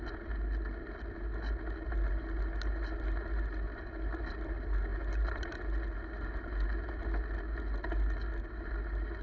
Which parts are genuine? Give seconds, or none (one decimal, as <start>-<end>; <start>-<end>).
0.0-9.2